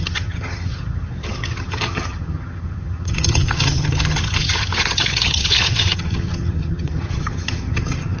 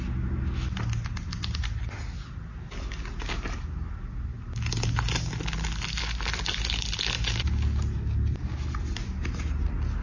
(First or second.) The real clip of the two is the second